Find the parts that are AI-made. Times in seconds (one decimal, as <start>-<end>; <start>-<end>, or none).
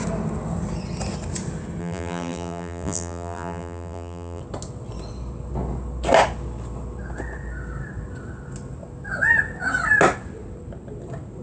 1.8-4.4